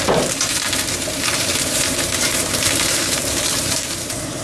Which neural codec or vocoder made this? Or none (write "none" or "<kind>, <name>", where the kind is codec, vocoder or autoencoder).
vocoder, BigVGAN v2